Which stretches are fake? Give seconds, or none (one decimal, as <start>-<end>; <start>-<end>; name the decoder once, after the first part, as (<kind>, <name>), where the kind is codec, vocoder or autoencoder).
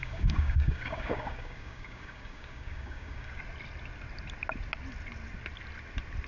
0.0-3.4 (codec, DAC)